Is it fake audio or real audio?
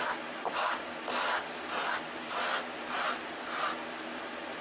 fake